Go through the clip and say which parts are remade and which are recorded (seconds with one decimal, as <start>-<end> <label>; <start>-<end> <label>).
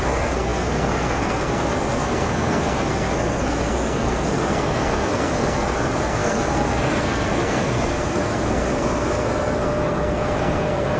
0.0-11.0 remade